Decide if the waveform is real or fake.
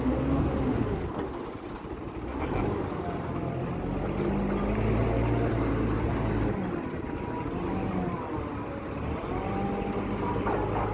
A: real